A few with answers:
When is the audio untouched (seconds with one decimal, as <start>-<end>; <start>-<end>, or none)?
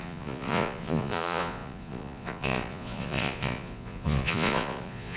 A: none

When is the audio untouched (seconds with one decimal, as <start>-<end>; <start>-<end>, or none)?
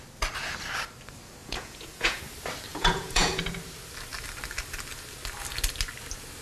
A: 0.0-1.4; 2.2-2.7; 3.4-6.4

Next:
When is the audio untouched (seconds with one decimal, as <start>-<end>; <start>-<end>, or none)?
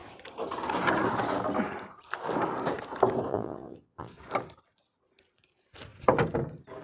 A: 0.0-3.3; 4.2-6.8